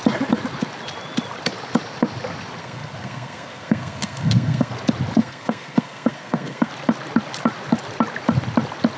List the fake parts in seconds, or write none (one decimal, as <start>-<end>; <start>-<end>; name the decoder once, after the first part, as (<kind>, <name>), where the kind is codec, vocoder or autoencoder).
2.6-4.7 (codec, SNAC); 5.2-6.7